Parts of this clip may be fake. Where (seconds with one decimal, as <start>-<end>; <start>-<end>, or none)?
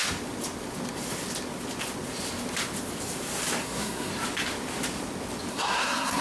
3.6-4.1; 5.5-6.2